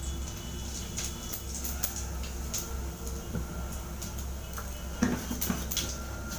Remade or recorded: recorded